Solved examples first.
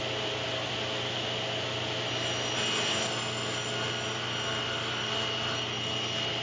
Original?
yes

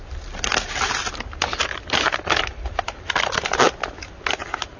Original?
yes